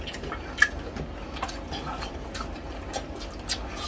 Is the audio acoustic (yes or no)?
yes